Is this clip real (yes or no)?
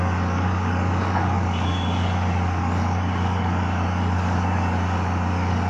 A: no